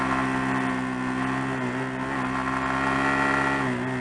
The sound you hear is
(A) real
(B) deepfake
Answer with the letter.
A